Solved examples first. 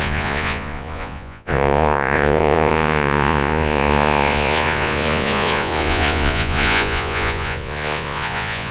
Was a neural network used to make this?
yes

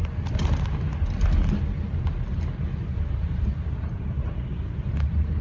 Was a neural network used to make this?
no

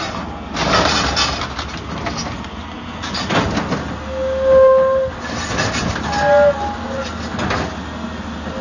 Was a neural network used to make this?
no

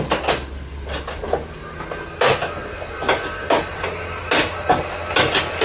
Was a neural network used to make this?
no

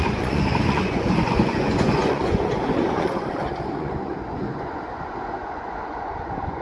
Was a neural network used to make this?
yes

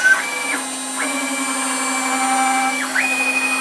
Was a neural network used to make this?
no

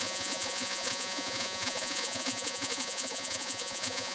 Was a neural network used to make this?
yes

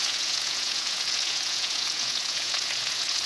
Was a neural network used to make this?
yes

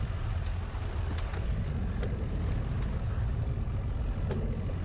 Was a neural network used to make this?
no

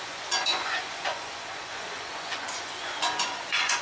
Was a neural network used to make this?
yes